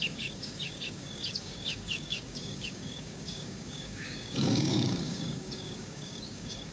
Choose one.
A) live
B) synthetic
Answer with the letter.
B